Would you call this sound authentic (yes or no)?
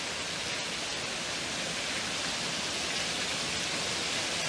yes